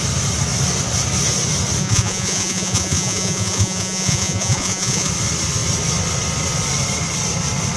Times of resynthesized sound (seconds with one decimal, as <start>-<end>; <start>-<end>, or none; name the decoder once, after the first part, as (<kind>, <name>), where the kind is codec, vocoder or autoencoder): 1.8-5.1 (vocoder, Vocos)